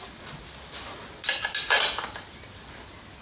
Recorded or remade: recorded